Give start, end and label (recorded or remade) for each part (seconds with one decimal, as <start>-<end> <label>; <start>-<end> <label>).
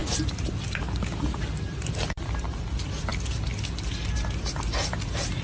0.0-5.4 recorded